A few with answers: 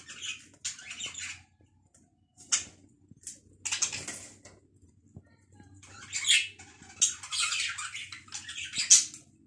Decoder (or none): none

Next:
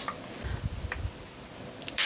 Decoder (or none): none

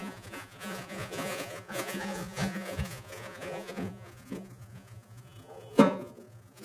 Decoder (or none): vocoder, Vocos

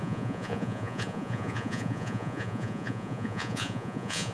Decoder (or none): vocoder, Vocos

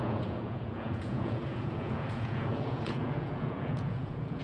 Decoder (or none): vocoder, Vocos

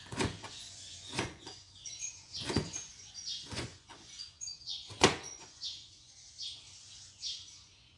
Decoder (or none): vocoder, Vocos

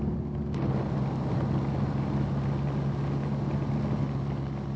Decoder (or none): none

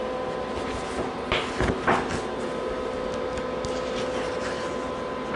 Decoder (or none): none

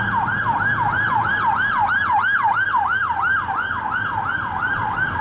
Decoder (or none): none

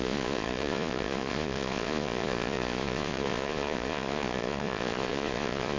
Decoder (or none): vocoder, Vocos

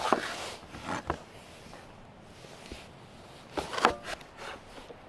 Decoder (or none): none